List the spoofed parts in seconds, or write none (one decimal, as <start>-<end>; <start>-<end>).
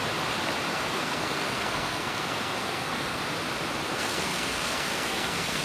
0.7-3.2; 3.9-5.6